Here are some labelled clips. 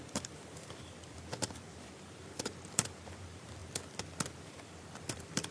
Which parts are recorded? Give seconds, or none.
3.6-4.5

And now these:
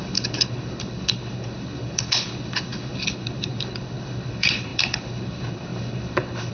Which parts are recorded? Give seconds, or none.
none

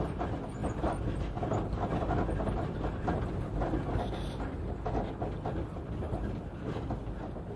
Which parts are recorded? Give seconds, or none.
0.0-7.6

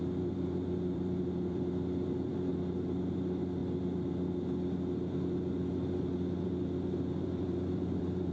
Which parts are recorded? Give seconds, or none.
2.5-3.1; 3.6-7.0

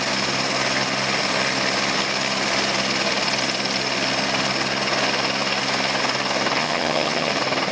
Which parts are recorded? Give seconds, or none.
0.0-6.6; 7.3-7.7

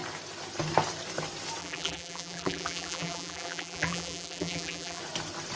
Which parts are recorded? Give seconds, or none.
0.0-1.6; 5.0-5.6

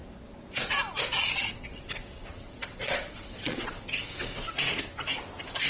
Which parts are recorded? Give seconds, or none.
0.0-1.1; 4.1-5.7